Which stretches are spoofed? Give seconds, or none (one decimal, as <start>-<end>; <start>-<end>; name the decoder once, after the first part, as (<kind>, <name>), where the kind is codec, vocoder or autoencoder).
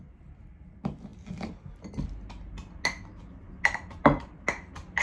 none